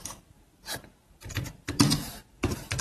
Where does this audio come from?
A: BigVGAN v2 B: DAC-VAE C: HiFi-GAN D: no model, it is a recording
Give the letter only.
A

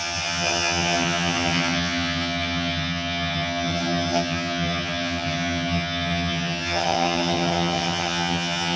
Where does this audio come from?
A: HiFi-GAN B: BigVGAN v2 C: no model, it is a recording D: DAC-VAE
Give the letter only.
A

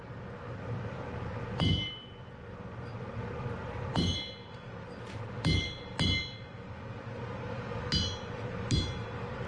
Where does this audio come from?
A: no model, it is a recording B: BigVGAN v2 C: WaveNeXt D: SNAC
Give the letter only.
A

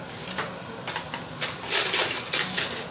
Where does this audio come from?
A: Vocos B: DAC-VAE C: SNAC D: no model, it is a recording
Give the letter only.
D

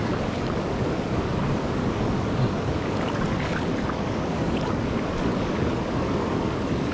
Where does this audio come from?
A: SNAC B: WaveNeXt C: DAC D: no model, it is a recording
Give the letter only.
C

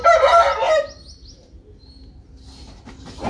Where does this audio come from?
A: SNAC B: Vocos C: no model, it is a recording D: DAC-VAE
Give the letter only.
C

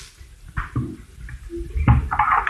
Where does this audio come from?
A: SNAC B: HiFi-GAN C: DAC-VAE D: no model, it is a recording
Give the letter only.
D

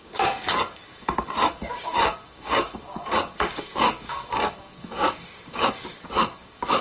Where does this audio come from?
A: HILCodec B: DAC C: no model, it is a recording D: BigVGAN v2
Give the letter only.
B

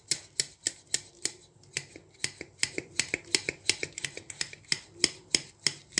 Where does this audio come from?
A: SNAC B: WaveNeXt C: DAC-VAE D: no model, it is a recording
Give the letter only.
D